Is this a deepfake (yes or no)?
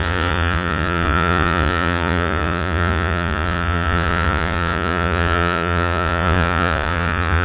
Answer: yes